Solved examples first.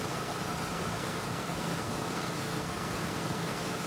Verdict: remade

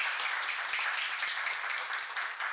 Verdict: recorded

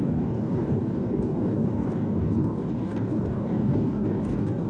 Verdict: remade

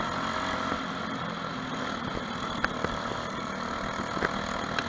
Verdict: recorded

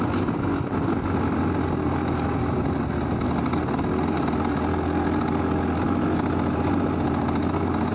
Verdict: recorded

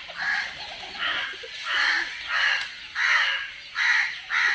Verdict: recorded